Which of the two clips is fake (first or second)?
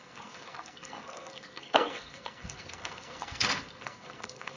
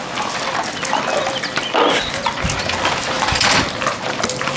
first